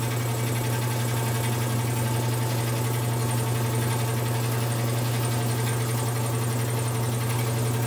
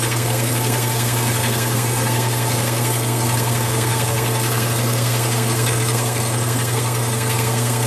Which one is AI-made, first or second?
second